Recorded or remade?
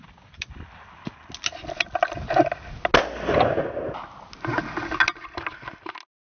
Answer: recorded